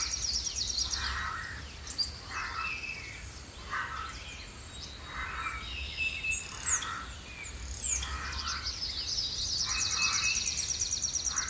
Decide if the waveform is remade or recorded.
recorded